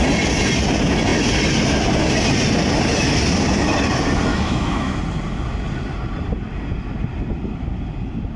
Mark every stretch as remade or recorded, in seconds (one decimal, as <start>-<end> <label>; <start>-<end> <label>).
0.0-4.3 recorded; 4.3-5.0 remade; 5.0-8.4 recorded